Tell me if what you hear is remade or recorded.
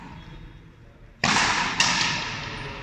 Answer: recorded